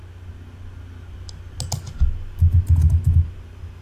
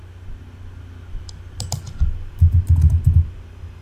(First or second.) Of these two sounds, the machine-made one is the second